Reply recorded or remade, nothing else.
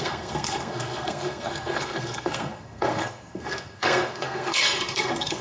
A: remade